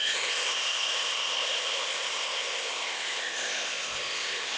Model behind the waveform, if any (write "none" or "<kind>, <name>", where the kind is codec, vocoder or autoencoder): codec, ZipCodec